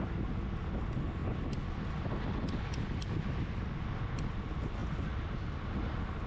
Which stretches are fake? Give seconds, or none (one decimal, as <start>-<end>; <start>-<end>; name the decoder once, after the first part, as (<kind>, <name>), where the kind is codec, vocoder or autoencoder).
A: none